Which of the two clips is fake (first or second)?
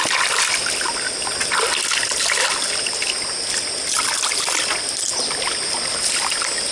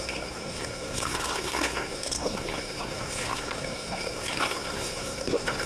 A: second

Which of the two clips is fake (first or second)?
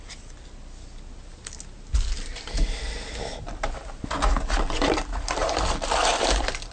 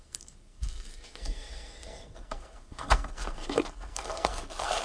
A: second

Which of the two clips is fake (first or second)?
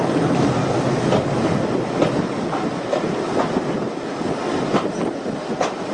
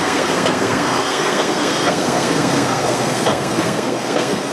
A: second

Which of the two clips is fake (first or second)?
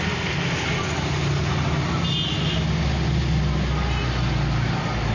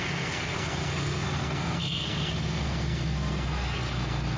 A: second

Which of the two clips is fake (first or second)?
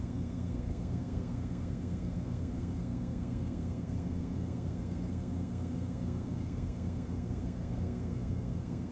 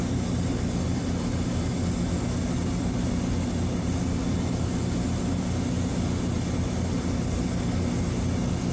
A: first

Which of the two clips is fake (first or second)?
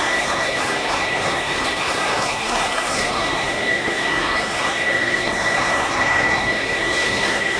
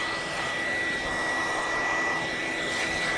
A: first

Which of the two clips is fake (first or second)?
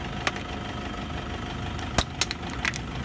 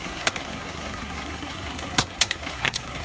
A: second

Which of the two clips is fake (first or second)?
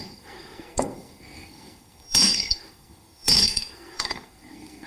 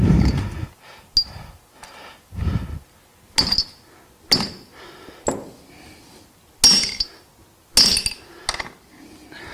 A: first